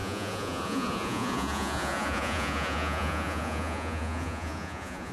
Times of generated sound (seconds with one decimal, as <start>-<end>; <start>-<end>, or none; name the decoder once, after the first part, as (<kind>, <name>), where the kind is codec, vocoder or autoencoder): 0.0-5.1 (vocoder, Vocos)